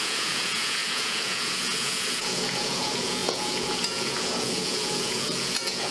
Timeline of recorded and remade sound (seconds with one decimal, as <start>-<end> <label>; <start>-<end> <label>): 0.0-5.9 remade

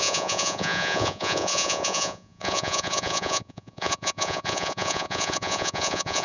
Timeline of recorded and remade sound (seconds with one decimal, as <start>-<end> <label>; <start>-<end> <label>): 0.0-6.2 remade

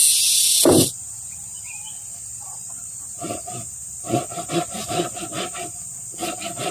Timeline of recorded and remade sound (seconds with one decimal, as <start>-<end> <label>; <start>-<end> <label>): 0.0-6.7 recorded

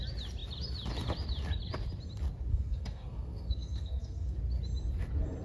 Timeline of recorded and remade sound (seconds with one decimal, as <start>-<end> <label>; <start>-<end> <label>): 0.0-2.5 recorded; 2.5-4.4 remade; 4.4-5.4 recorded

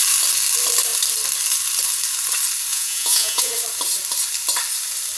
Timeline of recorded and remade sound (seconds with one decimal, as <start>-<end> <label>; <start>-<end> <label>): 0.0-2.7 recorded; 2.7-3.5 remade; 3.5-5.2 recorded

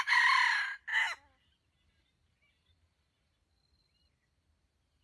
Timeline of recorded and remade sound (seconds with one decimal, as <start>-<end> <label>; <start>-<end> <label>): 0.0-5.0 recorded